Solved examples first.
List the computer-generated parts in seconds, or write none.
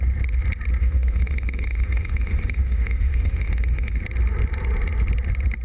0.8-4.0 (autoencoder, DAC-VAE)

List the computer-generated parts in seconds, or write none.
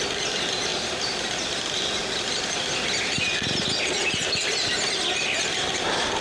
none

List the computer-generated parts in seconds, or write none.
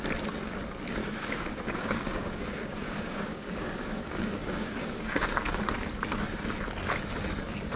1.0-5.6 (codec, DAC)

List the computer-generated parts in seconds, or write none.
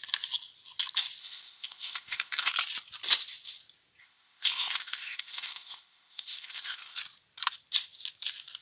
1.2-2.5 (codec, ZipCodec); 4.0-7.0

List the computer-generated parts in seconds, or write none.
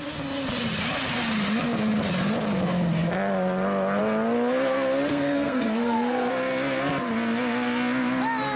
5.1-6.3 (codec, SNAC)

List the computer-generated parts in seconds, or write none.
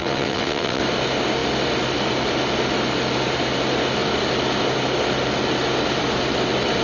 0.0-0.8 (vocoder, WaveNeXt)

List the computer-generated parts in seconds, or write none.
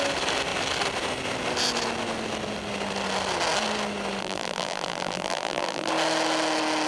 4.2-5.9 (vocoder, BigVGAN v2)